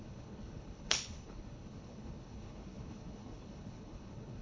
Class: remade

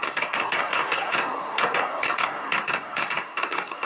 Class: remade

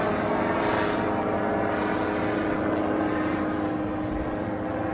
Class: recorded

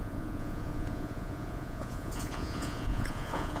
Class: remade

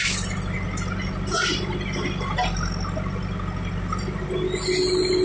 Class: recorded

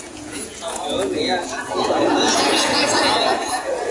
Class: remade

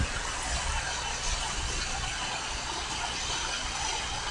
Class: recorded